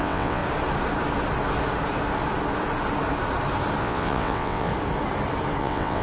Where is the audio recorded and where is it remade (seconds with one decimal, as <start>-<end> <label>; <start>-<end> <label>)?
0.0-0.4 remade; 0.4-3.8 recorded; 3.8-4.7 remade; 4.7-5.6 recorded; 5.6-6.0 remade